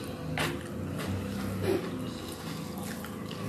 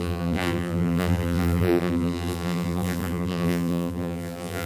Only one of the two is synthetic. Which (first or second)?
second